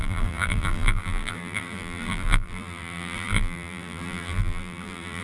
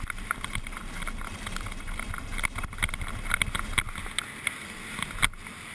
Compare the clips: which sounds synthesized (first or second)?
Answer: first